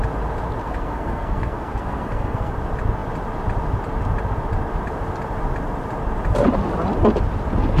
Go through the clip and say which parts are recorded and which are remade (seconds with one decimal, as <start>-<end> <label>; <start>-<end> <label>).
0.0-0.6 recorded; 0.6-2.5 remade; 2.5-7.8 recorded